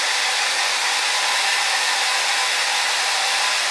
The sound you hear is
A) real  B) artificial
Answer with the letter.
B